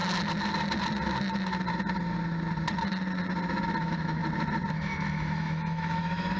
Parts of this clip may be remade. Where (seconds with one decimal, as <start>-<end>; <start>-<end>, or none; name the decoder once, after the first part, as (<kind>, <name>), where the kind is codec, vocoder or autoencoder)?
3.8-4.2 (autoencoder, DAC-VAE); 4.7-6.4